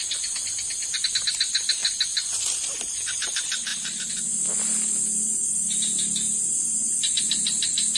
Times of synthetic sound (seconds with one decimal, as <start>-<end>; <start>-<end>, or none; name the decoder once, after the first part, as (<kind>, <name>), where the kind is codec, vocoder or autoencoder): none